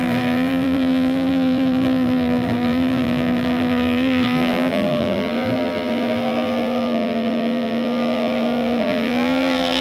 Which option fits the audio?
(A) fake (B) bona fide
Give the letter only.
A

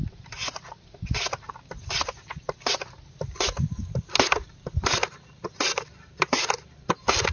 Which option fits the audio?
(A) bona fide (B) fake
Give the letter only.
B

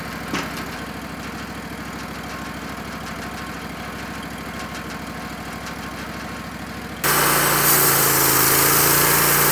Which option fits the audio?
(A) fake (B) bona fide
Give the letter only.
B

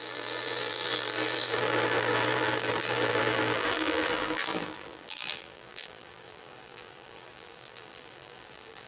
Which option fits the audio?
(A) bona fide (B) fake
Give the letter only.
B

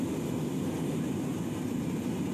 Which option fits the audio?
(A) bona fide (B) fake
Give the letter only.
A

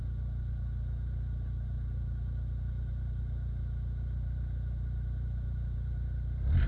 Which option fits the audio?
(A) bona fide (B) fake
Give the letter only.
B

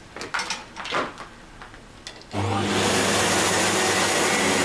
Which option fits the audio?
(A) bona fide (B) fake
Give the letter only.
A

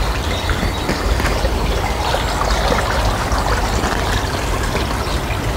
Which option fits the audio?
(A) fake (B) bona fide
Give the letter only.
B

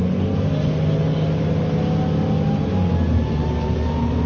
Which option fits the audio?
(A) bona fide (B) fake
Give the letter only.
A